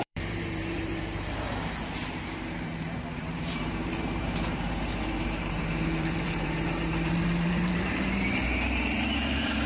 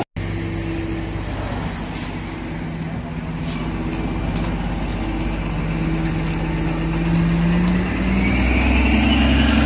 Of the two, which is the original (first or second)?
second